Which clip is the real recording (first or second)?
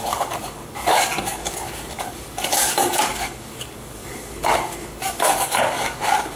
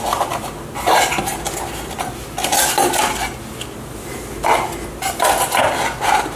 second